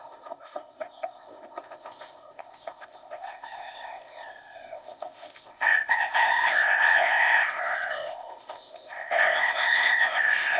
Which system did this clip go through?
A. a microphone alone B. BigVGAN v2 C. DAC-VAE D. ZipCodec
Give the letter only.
D